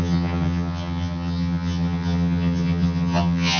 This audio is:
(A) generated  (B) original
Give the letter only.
A